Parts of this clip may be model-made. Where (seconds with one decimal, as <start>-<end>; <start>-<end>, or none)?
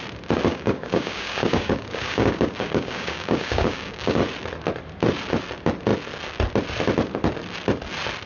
0.5-4.2